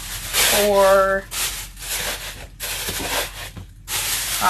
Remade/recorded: recorded